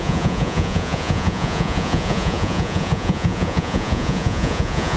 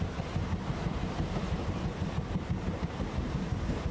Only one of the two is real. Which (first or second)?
second